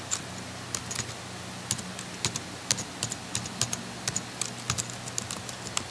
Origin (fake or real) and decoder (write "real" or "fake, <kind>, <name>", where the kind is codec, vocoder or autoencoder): real